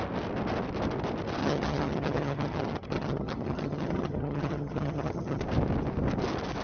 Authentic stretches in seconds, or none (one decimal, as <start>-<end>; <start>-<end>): 0.0-1.4; 5.4-6.6